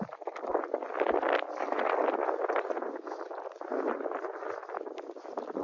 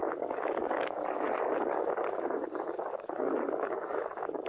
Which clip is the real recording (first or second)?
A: first